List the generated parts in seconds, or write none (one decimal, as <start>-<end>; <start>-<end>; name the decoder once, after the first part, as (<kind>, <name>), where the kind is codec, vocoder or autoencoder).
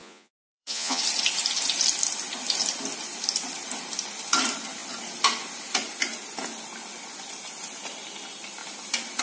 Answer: 0.0-1.0 (vocoder, Vocos)